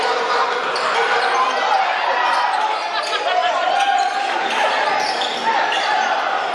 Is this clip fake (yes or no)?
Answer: no